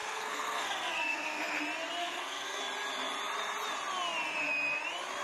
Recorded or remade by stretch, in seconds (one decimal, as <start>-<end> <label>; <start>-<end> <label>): 0.0-1.6 remade; 1.6-2.0 recorded; 2.0-2.6 remade; 2.6-5.2 recorded